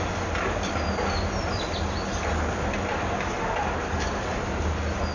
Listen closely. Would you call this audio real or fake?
real